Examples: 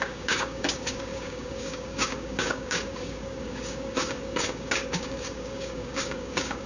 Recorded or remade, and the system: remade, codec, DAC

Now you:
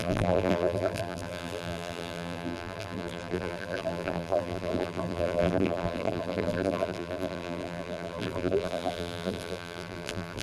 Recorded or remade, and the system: remade, vocoder, BigVGAN v2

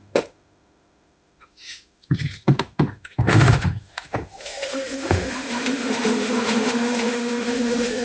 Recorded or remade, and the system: remade, autoencoder, DAC-VAE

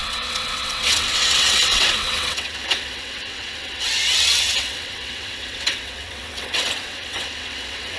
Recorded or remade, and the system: remade, vocoder, WaveNeXt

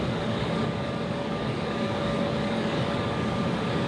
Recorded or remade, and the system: remade, codec, DAC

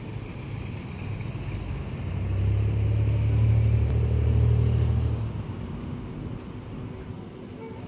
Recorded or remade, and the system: recorded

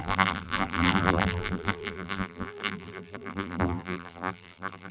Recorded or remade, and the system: remade, vocoder, BigVGAN v2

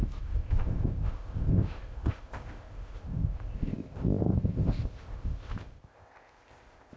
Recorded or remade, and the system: remade, codec, ZipCodec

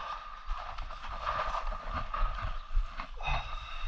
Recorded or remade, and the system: recorded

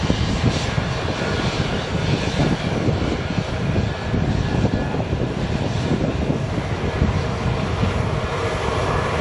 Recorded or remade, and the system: recorded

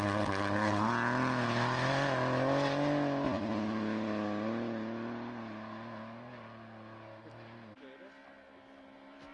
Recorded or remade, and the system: recorded